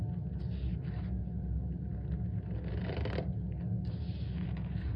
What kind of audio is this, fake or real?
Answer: real